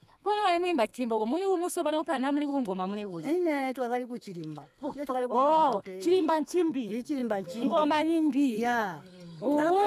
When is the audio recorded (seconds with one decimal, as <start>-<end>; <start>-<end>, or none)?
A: none